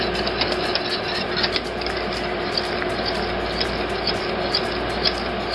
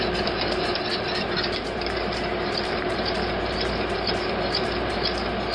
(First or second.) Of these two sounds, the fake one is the second